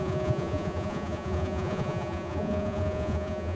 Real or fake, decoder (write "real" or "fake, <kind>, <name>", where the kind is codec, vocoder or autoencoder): fake, vocoder, Vocos